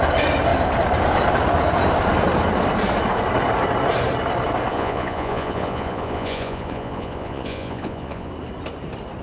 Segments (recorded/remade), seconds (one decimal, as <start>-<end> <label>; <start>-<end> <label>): 0.0-4.7 recorded; 4.7-8.3 remade; 8.3-9.2 recorded